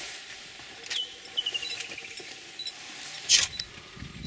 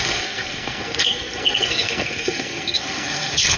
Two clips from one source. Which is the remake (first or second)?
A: second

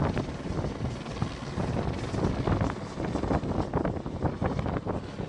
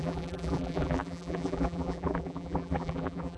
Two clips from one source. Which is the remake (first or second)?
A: second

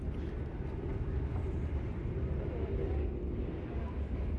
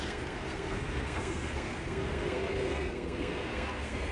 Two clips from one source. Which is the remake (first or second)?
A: second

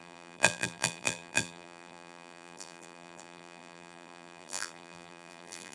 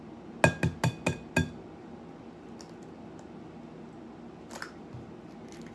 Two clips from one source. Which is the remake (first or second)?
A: first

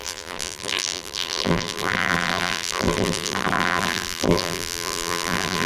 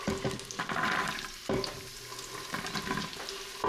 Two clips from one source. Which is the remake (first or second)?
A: first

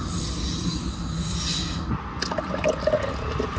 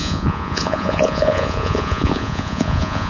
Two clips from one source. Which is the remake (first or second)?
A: second